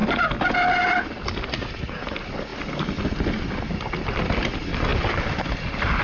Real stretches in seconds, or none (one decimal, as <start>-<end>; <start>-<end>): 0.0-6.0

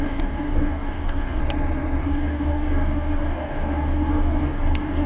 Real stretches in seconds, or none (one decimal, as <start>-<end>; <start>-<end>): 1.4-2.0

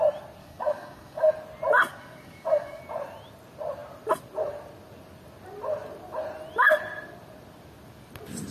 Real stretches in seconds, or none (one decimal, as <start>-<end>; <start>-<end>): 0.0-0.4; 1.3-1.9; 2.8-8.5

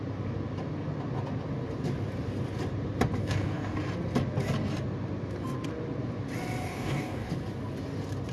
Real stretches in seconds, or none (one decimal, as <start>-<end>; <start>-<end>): 0.0-3.2; 3.8-6.6; 7.3-8.3

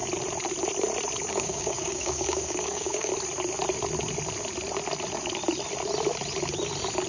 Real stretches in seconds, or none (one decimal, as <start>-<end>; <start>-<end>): 0.0-1.3; 3.1-7.1

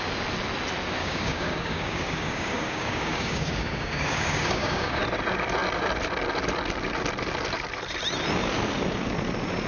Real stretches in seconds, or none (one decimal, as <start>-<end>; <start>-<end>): 0.0-1.0; 5.0-9.7

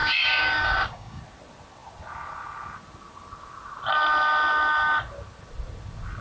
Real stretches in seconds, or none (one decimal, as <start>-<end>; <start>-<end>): 1.2-6.2